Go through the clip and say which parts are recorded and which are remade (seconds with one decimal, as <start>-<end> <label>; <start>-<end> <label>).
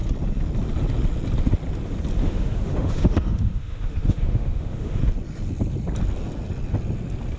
0.0-2.2 recorded; 2.2-5.0 remade; 5.0-7.4 recorded